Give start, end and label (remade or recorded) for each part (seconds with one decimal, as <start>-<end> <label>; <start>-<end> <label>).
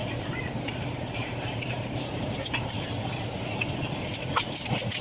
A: 0.0-2.9 remade; 2.9-5.0 recorded